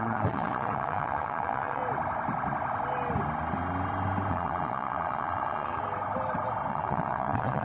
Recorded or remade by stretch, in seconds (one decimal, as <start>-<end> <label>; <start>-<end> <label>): 0.0-1.8 remade; 1.8-4.3 recorded; 4.3-5.8 remade; 5.8-6.7 recorded; 6.7-7.6 remade